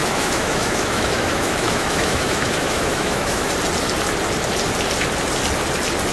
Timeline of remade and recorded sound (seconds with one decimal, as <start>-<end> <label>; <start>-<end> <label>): 0.0-3.5 remade; 3.5-6.1 recorded